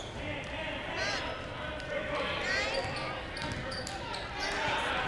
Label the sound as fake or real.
real